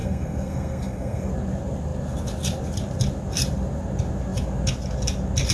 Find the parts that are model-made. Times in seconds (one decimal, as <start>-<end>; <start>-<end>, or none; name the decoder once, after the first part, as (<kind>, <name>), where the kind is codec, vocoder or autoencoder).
0.0-1.3 (codec, SNAC)